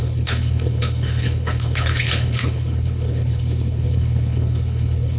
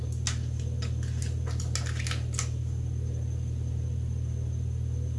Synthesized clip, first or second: first